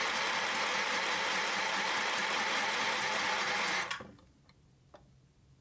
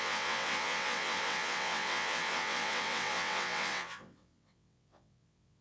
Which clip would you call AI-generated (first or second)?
second